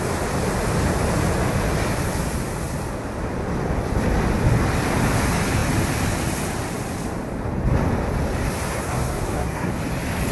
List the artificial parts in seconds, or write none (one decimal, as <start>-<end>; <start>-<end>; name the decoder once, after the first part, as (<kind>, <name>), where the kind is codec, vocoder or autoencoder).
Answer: 8.7-9.7 (codec, SNAC)